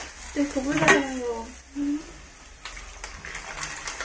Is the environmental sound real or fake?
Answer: real